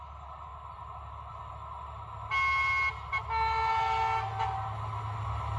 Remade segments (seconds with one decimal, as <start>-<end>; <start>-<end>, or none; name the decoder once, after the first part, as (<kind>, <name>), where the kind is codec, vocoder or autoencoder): none